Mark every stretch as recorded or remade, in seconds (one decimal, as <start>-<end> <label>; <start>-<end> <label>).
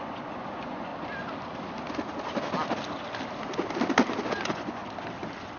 0.0-0.9 remade; 0.9-4.3 recorded; 4.3-4.8 remade; 4.8-5.6 recorded